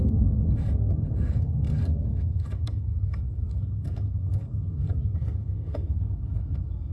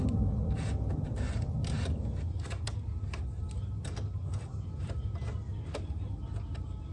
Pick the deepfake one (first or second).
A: first